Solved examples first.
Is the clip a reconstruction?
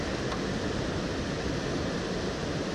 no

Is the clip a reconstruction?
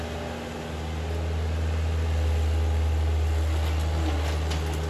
no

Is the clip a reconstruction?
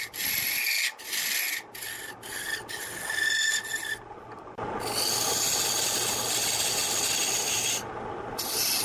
no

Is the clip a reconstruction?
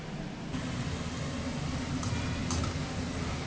no